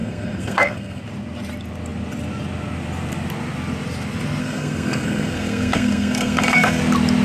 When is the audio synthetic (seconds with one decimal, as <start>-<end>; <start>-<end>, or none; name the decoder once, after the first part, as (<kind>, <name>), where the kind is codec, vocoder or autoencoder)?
0.0-1.0 (codec, SNAC); 4.4-6.8